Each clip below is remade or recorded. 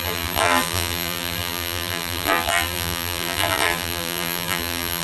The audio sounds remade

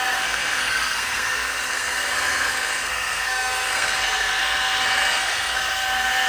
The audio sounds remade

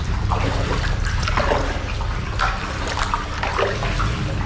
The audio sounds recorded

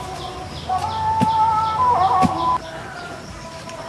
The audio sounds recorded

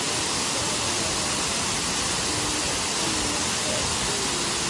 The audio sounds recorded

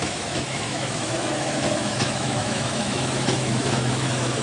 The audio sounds remade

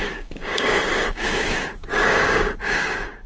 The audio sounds remade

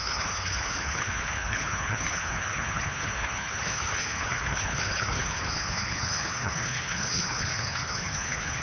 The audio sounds remade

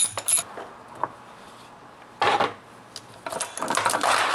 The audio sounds recorded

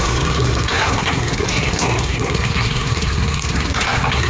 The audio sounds remade